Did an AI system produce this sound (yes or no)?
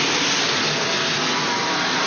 no